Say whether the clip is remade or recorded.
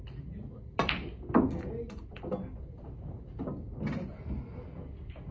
recorded